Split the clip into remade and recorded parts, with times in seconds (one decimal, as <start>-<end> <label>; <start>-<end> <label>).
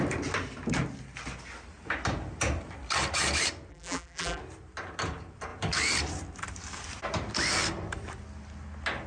0.0-3.7 recorded; 3.7-4.4 remade; 4.4-9.1 recorded